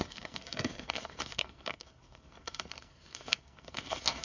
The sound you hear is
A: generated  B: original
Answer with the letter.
A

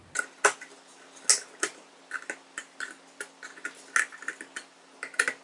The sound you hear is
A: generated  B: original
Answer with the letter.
B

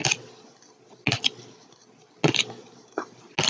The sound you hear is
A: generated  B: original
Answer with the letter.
B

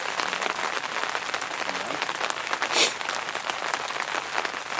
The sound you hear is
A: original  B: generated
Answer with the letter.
A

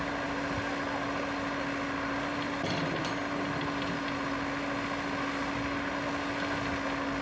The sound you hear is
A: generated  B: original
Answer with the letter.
B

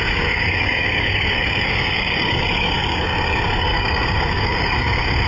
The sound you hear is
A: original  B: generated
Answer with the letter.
B